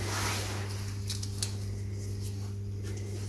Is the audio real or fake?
real